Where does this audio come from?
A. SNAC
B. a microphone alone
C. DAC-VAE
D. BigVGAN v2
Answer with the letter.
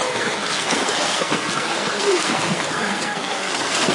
A